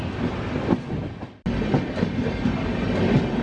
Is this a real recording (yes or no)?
yes